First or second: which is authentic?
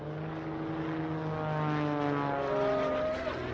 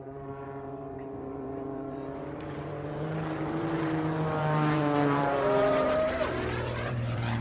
first